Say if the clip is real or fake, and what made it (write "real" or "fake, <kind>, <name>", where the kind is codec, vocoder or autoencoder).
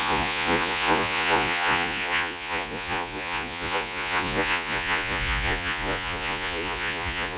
fake, vocoder, Vocos